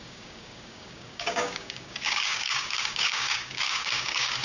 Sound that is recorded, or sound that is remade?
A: remade